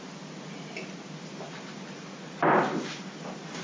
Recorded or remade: recorded